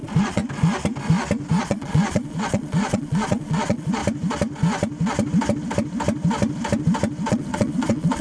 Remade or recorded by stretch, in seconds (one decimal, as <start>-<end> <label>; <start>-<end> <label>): 0.0-0.4 remade; 0.4-1.6 recorded; 1.6-4.0 remade; 4.0-7.3 recorded; 7.3-8.2 remade